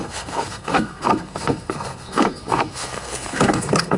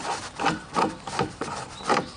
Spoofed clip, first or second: first